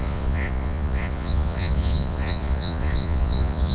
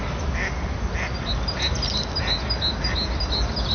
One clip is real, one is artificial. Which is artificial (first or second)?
first